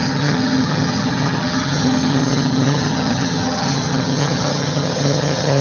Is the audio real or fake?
fake